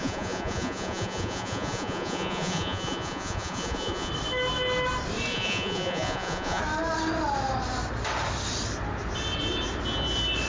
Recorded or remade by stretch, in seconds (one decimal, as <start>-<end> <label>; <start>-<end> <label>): 0.0-4.1 remade; 4.1-5.3 recorded; 5.3-6.6 remade; 6.6-10.5 recorded